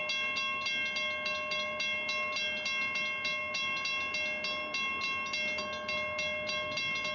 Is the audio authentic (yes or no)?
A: yes